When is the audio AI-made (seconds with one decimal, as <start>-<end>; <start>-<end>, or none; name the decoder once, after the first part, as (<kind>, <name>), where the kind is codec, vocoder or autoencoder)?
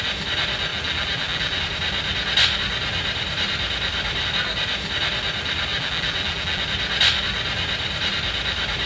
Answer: 0.7-1.6 (vocoder, BigVGAN v2); 5.7-6.6